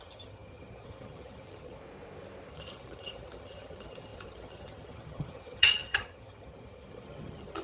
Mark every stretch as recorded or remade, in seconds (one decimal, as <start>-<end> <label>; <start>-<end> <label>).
0.0-1.8 remade; 1.8-2.5 recorded; 2.5-7.6 remade